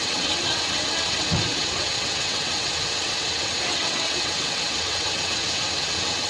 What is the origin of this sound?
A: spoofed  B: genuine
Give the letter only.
A